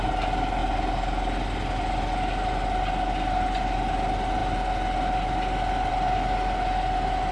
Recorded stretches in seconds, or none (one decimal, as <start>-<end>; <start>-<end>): 0.0-7.3